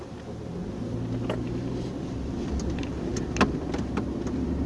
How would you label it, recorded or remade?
recorded